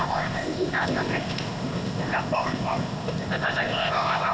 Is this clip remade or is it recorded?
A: remade